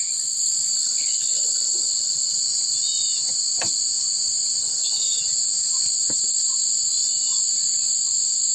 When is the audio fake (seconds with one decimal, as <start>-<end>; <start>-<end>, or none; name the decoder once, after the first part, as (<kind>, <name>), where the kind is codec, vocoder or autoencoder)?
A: 0.7-2.4 (codec, HILCodec); 4.6-5.2